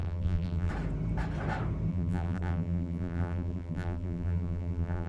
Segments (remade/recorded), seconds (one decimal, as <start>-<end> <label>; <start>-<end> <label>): 0.0-0.7 remade; 0.7-1.9 recorded; 1.9-5.1 remade